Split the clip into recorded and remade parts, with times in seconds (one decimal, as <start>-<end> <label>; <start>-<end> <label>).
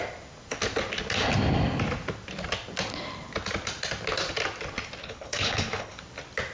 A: 0.0-5.0 recorded; 5.0-6.0 remade; 6.0-6.5 recorded